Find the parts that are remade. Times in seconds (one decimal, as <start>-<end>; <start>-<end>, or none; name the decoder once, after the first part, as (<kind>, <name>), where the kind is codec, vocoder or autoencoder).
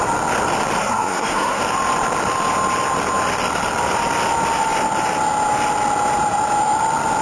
0.8-1.6 (codec, SNAC)